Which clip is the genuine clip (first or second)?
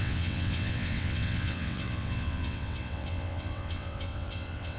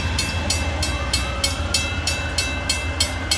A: second